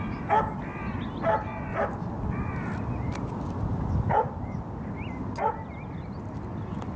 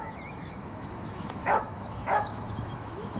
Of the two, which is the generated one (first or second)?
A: second